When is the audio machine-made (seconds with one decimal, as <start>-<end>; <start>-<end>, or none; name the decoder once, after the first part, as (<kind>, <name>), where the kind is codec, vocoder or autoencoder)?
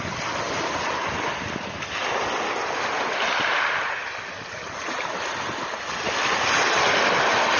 2.0-2.7 (vocoder, BigVGAN v2)